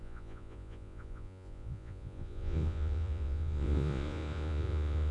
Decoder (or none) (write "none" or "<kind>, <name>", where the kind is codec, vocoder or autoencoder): vocoder, Vocos